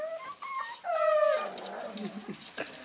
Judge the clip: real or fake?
real